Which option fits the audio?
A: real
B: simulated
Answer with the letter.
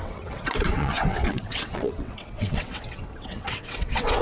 B